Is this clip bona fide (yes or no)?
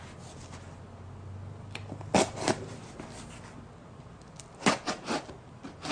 yes